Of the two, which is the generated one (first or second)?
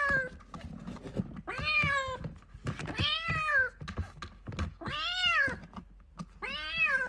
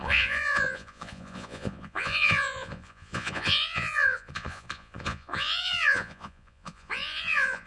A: second